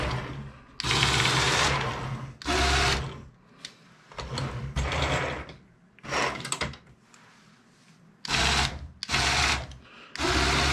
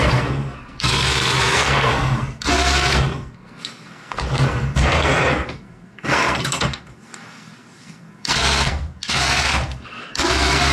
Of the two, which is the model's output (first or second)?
second